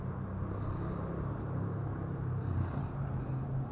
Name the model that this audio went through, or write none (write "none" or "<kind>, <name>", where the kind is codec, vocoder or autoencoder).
vocoder, BigVGAN v2